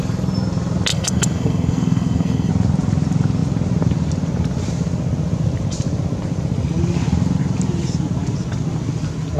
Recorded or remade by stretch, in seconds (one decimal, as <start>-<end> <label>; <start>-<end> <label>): 0.0-0.9 recorded; 0.9-2.5 remade; 2.5-9.4 recorded